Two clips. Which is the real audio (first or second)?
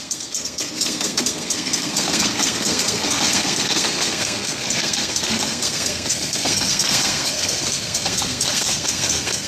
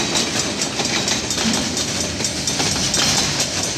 second